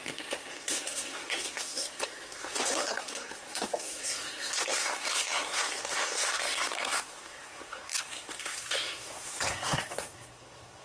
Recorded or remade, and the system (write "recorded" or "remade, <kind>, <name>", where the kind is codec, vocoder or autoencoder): remade, codec, SNAC